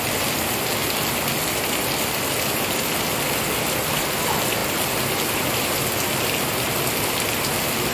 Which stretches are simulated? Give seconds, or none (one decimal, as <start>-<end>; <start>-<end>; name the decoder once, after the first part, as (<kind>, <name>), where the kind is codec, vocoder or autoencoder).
none